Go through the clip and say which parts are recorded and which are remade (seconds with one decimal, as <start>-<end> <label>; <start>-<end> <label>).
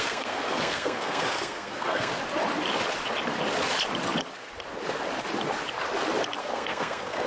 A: 0.0-2.1 remade; 2.1-6.4 recorded; 6.4-7.3 remade